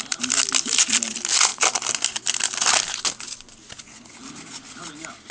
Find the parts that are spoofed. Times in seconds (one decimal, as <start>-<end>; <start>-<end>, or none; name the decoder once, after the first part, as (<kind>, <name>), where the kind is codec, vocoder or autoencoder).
none